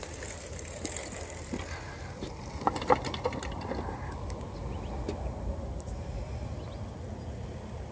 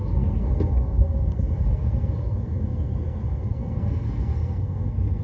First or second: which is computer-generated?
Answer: second